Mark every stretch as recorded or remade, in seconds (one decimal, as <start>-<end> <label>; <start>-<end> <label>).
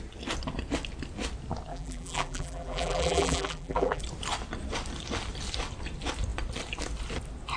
0.0-1.7 recorded; 1.7-4.0 remade; 4.0-7.6 recorded